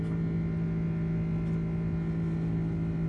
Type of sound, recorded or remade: recorded